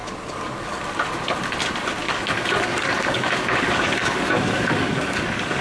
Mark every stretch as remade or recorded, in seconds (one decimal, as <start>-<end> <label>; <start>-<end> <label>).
0.0-0.8 remade; 0.8-2.0 recorded; 2.0-5.6 remade

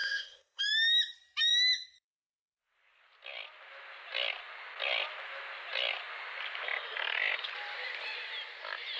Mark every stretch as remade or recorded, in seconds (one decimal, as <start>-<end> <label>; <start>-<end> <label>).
0.0-0.6 remade; 0.6-9.0 recorded

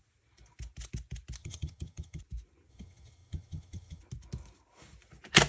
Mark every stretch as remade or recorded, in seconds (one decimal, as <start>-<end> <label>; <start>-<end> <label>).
0.0-1.4 recorded; 1.4-2.2 remade; 2.2-2.7 recorded; 2.7-4.0 remade; 4.0-5.5 recorded

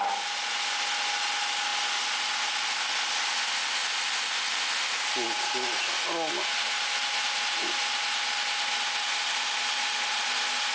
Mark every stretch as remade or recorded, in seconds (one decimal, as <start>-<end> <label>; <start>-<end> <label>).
0.0-10.7 recorded

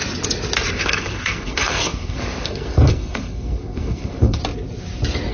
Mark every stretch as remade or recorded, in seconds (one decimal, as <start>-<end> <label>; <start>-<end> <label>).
0.0-0.7 recorded; 0.7-4.4 remade; 4.4-5.3 recorded